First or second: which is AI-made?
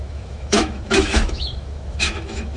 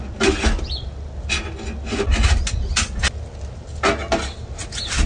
first